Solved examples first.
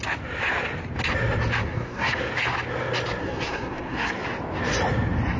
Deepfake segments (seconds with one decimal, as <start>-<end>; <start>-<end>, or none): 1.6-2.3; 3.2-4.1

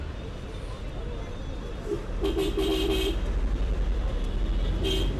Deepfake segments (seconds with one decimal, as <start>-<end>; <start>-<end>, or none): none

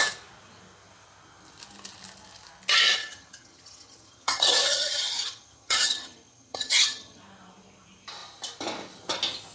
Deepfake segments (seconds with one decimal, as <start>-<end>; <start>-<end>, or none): 3.0-7.2